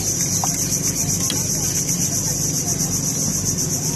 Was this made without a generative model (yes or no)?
yes